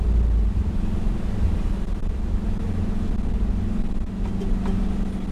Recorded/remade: recorded